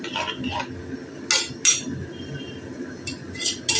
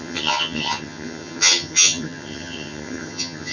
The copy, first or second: second